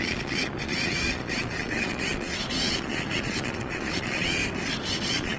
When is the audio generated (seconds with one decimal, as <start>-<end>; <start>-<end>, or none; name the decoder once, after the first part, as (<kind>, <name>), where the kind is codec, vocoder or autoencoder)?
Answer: 0.0-4.4 (vocoder, Vocos); 5.0-5.4